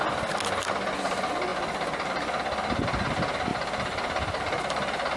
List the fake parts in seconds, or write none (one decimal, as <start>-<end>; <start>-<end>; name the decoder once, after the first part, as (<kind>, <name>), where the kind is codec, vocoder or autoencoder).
3.5-5.2 (vocoder, BigVGAN v2)